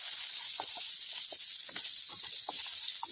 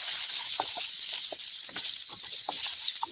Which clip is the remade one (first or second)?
second